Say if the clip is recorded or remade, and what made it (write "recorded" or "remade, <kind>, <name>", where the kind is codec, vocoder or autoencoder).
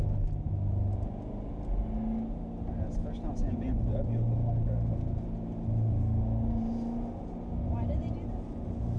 recorded